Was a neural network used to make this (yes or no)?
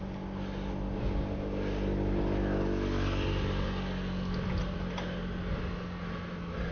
no